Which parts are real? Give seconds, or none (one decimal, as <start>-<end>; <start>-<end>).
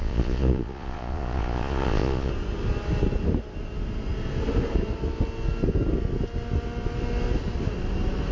2.3-8.3